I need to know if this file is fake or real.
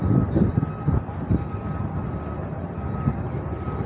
real